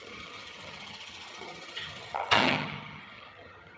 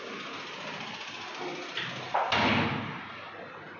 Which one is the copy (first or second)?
first